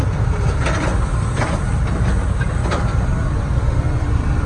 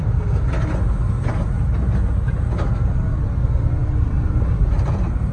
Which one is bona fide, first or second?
second